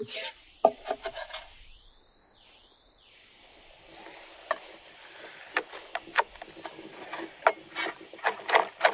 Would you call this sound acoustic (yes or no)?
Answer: yes